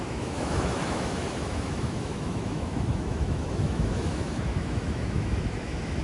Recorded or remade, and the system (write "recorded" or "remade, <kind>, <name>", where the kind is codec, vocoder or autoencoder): remade, autoencoder, DAC-VAE